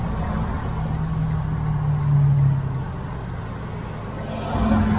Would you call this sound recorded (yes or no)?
yes